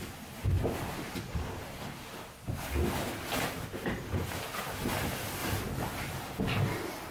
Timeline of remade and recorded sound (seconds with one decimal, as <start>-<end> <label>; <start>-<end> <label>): 0.0-5.4 recorded; 5.4-6.4 remade; 6.4-7.1 recorded